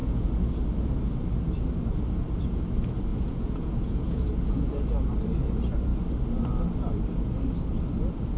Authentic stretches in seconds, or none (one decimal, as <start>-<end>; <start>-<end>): 0.5-3.1; 4.9-8.4